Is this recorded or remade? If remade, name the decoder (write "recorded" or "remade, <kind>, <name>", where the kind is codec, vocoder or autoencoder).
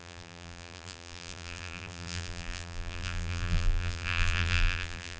remade, vocoder, BigVGAN v2